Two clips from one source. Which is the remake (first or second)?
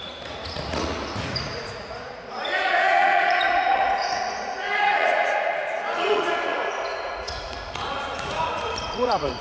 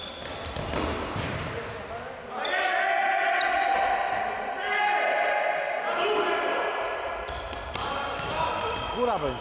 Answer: first